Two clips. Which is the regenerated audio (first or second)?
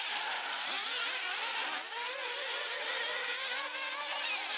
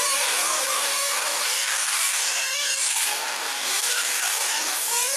second